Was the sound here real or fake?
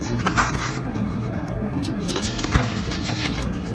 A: fake